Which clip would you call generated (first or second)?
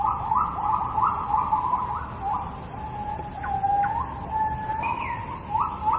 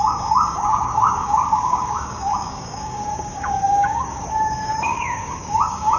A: second